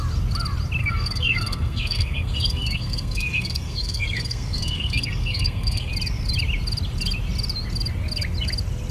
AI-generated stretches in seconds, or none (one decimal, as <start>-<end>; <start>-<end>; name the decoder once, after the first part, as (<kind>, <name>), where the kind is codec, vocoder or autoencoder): 0.8-5.9 (codec, SNAC)